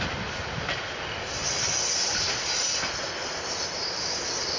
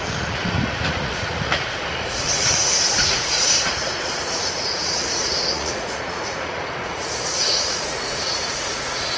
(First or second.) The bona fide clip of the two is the first